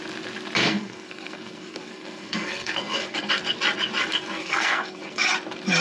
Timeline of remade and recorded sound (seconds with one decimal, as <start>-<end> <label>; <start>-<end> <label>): 0.0-0.6 recorded; 0.6-3.3 remade; 3.3-4.0 recorded; 4.0-5.3 remade; 5.3-5.8 recorded